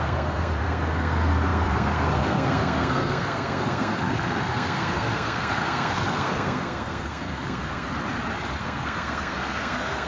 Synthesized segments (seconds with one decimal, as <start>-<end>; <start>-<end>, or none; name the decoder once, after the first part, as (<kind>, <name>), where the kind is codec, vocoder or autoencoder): 0.0-7.9 (codec, SNAC); 8.6-10.1

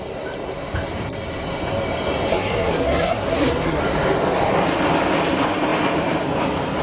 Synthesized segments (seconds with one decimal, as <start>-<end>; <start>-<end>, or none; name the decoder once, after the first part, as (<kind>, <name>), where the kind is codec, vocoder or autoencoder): 2.3-3.8 (codec, SNAC)

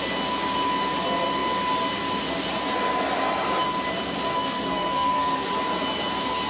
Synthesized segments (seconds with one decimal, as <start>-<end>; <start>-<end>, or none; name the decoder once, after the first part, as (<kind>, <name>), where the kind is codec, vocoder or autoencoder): 4.3-5.5 (codec, SNAC)

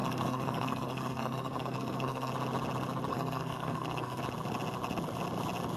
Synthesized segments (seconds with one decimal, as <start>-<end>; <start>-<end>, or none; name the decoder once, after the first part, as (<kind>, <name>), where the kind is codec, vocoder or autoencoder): 0.0-2.3 (codec, SNAC); 3.1-4.2

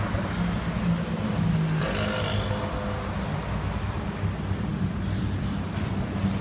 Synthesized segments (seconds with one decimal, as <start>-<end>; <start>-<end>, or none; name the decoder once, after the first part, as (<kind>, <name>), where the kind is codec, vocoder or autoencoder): none

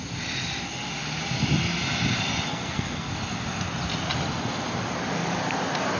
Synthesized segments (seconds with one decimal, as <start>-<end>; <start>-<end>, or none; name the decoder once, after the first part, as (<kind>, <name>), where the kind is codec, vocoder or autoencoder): 2.5-3.1 (codec, SNAC)